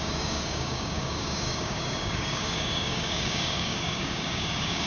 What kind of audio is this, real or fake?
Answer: fake